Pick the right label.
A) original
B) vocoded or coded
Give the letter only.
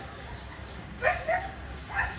B